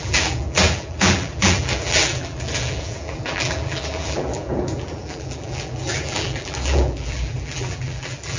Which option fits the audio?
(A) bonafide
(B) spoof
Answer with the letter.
B